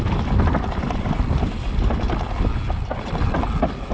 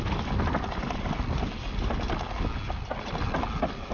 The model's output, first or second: first